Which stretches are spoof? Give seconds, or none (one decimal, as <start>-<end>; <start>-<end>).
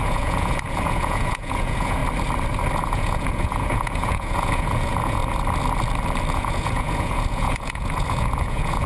0.0-2.0; 2.8-5.2; 6.3-8.9